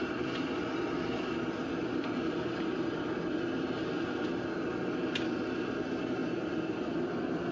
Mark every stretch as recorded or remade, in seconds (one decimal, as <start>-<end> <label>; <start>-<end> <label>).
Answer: 0.0-7.5 recorded